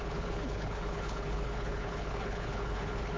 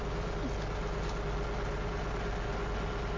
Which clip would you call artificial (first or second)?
first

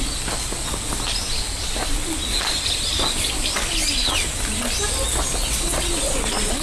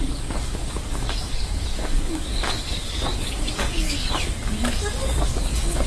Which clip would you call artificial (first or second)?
second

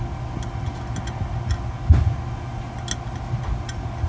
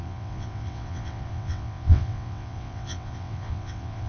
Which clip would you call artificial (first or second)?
second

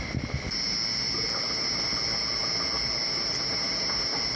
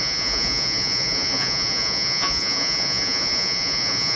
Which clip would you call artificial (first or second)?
second